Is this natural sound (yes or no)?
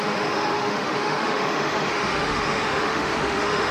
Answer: no